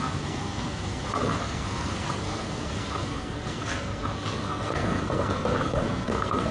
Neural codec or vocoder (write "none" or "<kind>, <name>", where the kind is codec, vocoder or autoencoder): codec, SNAC